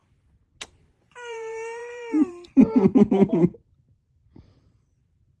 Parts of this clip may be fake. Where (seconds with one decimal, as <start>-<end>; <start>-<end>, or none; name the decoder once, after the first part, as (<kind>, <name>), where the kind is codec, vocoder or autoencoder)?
0.8-5.4 (vocoder, BigVGAN v2)